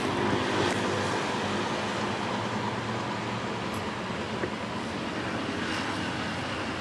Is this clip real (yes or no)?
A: yes